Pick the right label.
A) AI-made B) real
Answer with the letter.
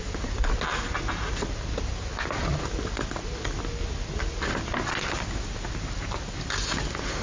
B